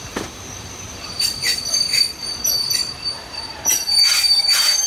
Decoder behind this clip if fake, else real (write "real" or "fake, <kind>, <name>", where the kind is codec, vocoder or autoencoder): fake, vocoder, BigVGAN v2